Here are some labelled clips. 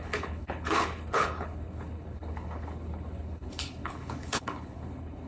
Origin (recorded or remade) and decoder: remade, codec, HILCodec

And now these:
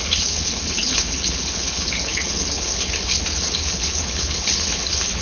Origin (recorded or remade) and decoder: remade, codec, HILCodec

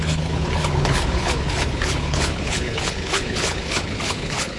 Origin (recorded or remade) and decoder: remade, codec, HILCodec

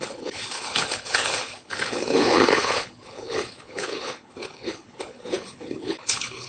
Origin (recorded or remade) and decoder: remade, codec, HILCodec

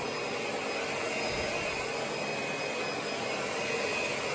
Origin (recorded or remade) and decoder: recorded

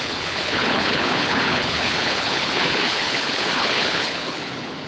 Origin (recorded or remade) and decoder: remade, codec, HILCodec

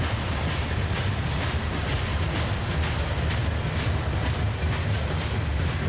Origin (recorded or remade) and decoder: recorded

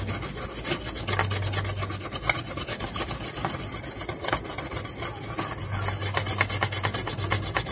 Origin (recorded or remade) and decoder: recorded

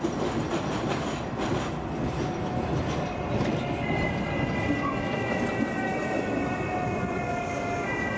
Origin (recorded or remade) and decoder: recorded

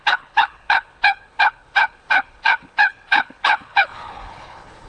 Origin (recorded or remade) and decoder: remade, codec, HILCodec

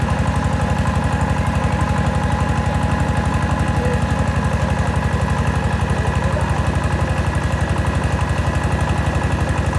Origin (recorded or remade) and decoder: recorded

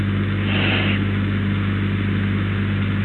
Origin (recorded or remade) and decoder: recorded